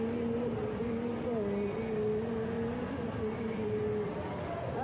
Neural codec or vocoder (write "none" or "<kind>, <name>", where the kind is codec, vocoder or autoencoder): none